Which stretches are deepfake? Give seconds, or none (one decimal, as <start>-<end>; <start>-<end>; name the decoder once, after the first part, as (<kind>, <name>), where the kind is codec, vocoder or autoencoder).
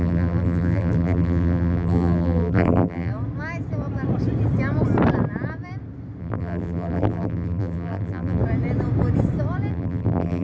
0.0-3.1 (vocoder, BigVGAN v2); 6.2-8.4; 9.7-10.4